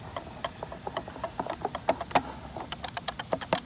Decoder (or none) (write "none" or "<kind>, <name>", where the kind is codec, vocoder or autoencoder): none